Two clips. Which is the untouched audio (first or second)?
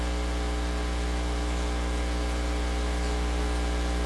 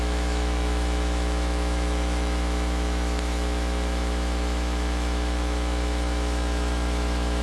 first